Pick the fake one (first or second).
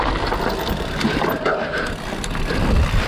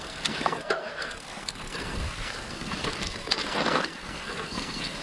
second